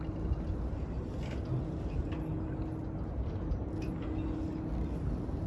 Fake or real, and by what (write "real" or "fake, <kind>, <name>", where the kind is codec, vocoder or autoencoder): real